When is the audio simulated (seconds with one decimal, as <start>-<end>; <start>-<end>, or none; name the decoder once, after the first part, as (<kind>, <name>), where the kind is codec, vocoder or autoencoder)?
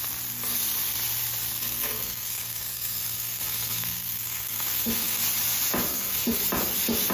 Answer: 1.6-5.2 (codec, SNAC); 5.9-6.4